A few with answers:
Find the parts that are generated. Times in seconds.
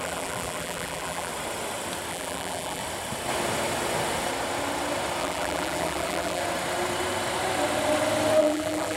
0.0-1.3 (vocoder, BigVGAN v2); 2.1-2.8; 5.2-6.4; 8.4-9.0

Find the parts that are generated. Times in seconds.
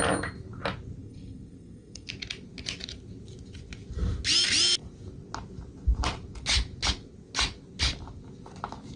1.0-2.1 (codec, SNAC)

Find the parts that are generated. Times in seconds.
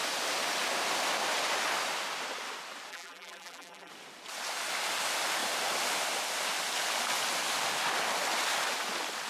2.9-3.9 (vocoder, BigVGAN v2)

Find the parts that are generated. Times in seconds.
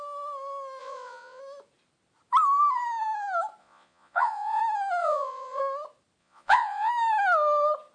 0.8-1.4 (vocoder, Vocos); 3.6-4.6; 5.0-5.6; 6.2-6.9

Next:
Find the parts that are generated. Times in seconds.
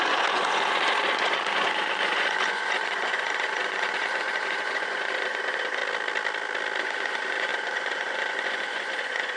0.0-5.8 (vocoder, Vocos); 6.8-9.4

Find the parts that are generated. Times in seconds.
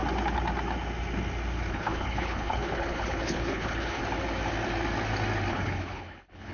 1.7-4.0 (codec, HILCodec); 5.5-6.5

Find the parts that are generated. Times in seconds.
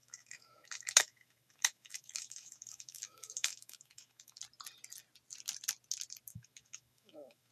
0.0-4.4 (autoencoder, DAC-VAE); 6.3-7.5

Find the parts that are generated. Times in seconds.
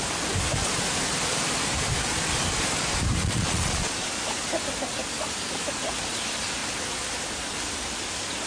3.2-4.2 (vocoder, Vocos)